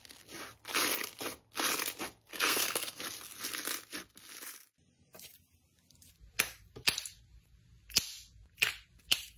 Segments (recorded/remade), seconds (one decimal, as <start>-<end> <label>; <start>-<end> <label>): 0.0-2.3 recorded; 2.3-3.0 remade; 3.0-9.4 recorded